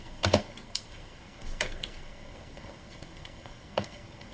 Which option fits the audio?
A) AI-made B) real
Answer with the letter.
A